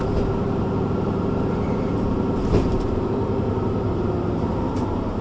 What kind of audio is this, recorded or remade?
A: remade